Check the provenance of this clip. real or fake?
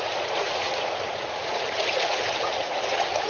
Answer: fake